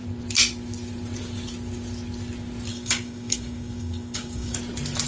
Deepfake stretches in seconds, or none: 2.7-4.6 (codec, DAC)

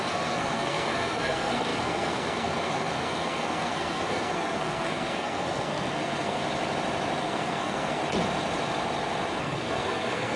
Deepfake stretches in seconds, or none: 0.0-6.4 (codec, SNAC); 7.2-8.0; 9.4-10.4

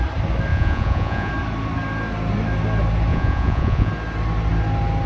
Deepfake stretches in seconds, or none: 0.5-1.3 (vocoder, Vocos); 3.1-3.9

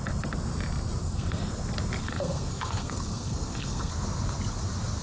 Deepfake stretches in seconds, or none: 1.0-1.5 (codec, SNAC); 2.0-3.9